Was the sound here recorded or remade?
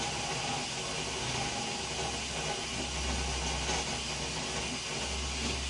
recorded